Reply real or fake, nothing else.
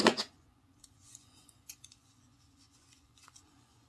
fake